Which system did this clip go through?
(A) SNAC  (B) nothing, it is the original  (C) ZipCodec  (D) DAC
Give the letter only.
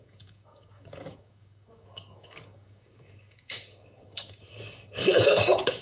D